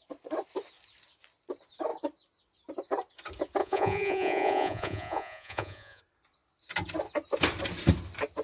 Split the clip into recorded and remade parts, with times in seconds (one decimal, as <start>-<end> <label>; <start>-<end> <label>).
0.0-3.6 recorded; 3.6-6.0 remade; 6.0-8.4 recorded